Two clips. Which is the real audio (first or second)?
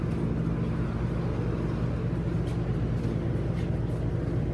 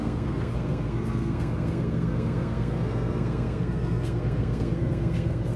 first